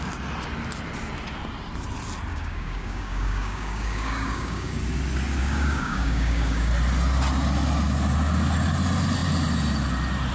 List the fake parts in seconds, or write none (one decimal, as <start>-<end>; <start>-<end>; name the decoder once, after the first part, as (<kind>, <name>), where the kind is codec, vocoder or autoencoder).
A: 2.3-4.8 (codec, DAC); 5.4-6.7